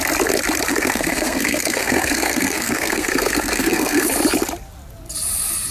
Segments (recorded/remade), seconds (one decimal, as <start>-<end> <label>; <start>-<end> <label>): 0.0-0.7 recorded; 0.7-4.1 remade; 4.1-5.7 recorded